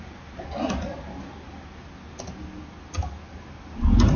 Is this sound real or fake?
real